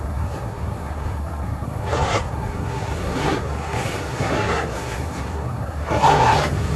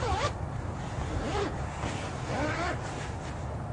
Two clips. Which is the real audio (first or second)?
second